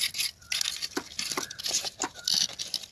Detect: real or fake real